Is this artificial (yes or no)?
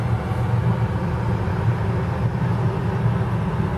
no